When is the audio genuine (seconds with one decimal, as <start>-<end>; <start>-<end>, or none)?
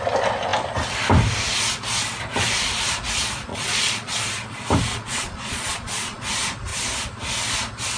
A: 0.0-3.5; 4.2-4.9; 6.2-8.0